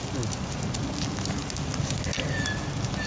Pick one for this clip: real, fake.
real